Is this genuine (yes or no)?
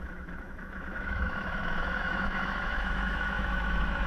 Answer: no